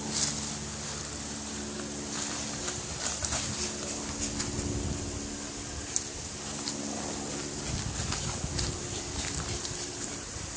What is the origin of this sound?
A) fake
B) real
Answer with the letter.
B